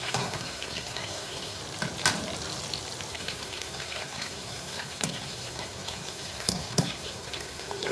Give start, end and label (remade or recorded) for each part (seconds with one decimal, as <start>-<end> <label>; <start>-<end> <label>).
0.0-1.6 remade; 1.6-3.1 recorded; 3.1-7.9 remade